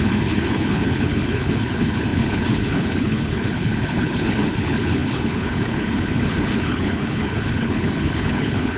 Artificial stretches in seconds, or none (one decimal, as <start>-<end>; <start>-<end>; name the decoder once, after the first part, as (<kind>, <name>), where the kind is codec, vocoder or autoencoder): 0.0-8.8 (codec, HILCodec)

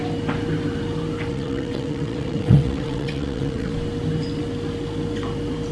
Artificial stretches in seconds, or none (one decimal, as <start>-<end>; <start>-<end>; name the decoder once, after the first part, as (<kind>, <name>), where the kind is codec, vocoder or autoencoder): 1.3-3.7 (vocoder, WaveNeXt)

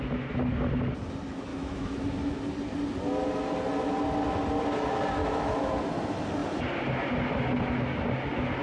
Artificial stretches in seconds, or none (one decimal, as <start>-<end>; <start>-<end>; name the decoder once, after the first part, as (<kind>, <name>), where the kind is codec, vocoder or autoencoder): 1.5-2.4 (autoencoder, DAC-VAE); 5.2-5.7

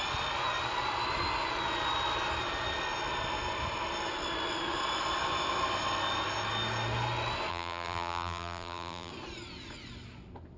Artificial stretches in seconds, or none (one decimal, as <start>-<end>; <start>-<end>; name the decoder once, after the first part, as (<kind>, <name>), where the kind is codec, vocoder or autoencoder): 7.5-9.1 (vocoder, BigVGAN v2)

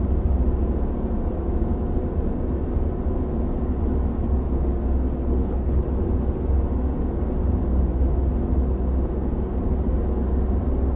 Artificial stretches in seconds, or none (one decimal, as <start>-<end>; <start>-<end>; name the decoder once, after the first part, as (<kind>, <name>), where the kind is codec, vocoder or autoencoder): 5.2-5.8 (codec, HILCodec)